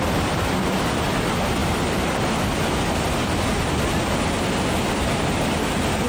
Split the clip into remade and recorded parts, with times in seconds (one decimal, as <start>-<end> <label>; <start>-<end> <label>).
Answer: 0.0-6.1 recorded